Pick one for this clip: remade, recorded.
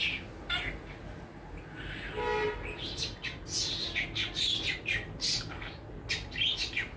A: recorded